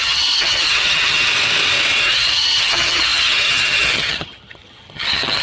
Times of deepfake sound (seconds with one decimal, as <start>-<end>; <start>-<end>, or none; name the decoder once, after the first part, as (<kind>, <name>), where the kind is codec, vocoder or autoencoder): 0.0-1.3 (vocoder, HiFi-GAN); 2.0-5.4